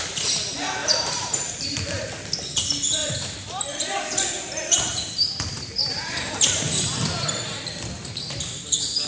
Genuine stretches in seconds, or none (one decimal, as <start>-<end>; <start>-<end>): 0.0-0.8; 2.1-3.0; 3.6-4.9; 7.7-9.1